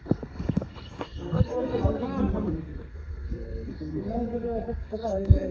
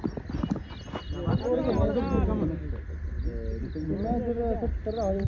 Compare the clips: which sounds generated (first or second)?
first